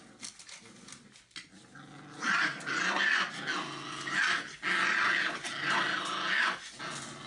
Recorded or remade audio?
recorded